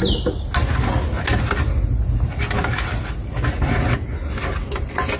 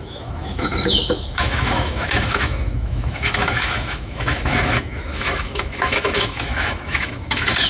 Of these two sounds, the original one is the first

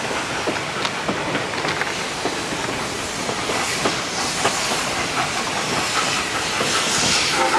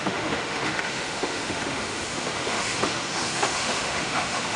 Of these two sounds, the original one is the first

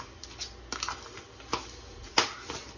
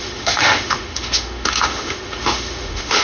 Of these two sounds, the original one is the first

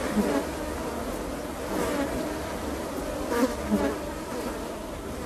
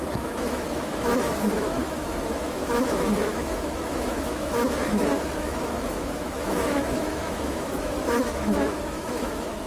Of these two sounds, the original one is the first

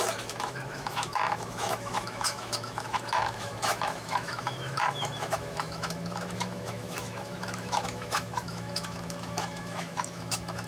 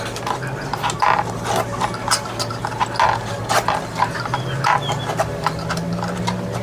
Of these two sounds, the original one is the second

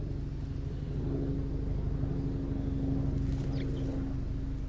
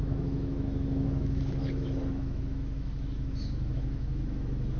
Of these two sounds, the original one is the first